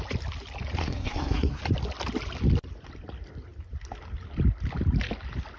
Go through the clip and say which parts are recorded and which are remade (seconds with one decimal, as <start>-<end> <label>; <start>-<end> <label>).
0.0-0.8 recorded; 0.8-1.6 remade; 1.6-5.6 recorded